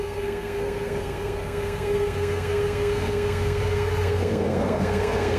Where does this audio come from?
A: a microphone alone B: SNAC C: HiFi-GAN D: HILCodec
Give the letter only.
B